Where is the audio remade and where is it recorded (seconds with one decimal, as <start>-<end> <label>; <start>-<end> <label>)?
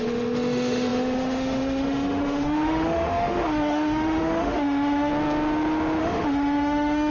0.0-5.1 remade; 5.1-6.0 recorded; 6.0-7.1 remade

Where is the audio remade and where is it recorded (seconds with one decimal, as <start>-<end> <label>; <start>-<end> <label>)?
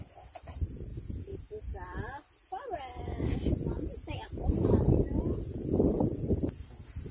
0.0-7.1 recorded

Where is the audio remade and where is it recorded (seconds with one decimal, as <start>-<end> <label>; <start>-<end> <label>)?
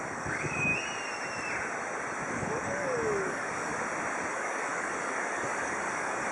0.0-0.7 remade; 0.7-2.3 recorded; 2.3-3.7 remade; 3.7-4.3 recorded; 4.3-6.3 remade